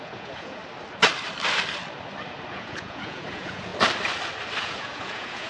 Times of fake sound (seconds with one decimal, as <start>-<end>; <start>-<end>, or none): 0.0-0.6; 2.5-3.7; 4.6-5.5